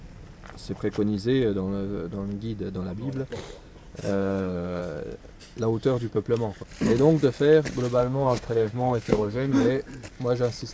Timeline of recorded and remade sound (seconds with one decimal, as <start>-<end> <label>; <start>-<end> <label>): 0.0-4.0 recorded; 4.0-4.8 remade; 4.8-8.0 recorded; 8.0-9.5 remade; 9.5-10.7 recorded